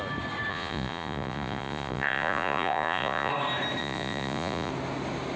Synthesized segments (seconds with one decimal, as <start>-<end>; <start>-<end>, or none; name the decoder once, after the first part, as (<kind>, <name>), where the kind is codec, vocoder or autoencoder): 0.5-3.3 (vocoder, Vocos); 3.8-4.7